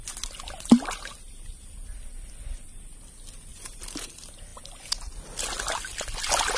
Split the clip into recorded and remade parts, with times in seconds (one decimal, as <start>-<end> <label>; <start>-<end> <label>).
0.0-3.5 recorded; 3.5-4.1 remade; 4.1-6.6 recorded